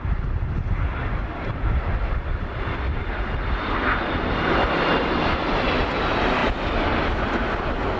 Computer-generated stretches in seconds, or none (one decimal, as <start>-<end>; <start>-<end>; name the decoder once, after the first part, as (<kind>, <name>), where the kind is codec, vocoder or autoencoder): none